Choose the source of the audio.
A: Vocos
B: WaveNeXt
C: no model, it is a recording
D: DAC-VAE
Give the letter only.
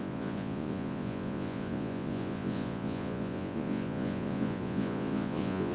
A